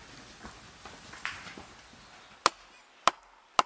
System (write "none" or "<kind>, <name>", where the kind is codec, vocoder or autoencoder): none